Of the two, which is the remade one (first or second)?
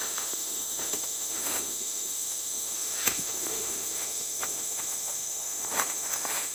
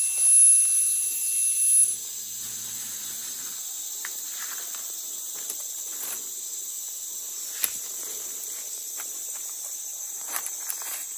first